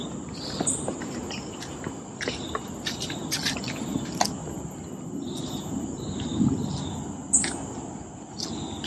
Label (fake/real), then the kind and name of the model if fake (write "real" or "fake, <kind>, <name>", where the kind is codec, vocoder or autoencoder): real